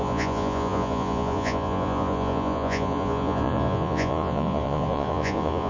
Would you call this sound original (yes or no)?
no